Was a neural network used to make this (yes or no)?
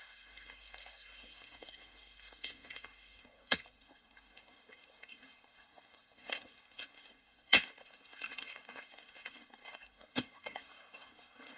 yes